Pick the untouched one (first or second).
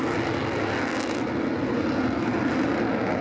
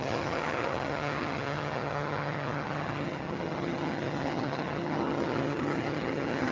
first